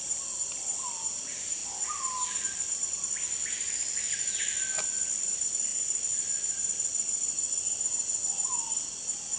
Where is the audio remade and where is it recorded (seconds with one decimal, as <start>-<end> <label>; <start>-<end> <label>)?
0.0-9.4 recorded